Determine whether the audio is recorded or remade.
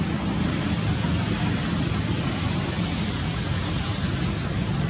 recorded